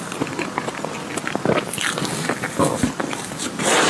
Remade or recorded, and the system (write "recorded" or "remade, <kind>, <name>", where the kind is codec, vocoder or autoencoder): recorded